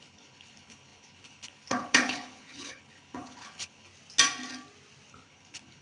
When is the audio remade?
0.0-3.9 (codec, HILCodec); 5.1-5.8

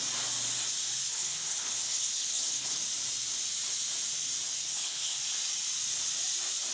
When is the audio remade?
1.1-2.8 (codec, HILCodec); 4.6-5.2

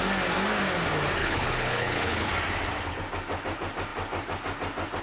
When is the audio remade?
1.2-2.3 (codec, HILCodec)

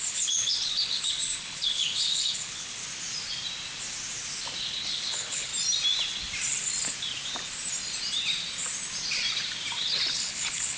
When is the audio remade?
0.0-2.8 (codec, HILCodec); 4.7-5.5; 10.1-10.8

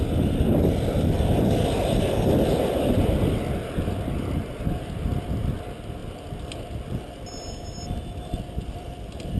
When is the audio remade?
none